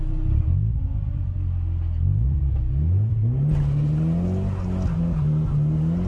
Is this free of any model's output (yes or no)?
yes